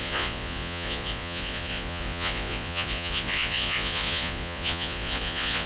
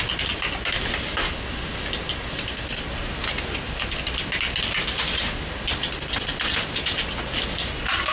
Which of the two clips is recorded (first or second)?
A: second